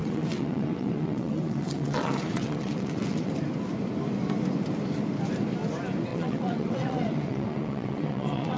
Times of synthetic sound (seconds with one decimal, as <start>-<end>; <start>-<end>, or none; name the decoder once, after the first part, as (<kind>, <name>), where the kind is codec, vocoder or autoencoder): 0.0-3.3 (vocoder, WaveNeXt); 6.1-8.6